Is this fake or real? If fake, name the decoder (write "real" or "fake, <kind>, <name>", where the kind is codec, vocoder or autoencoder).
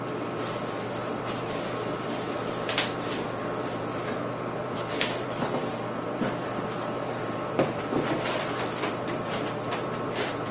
fake, vocoder, BigVGAN v2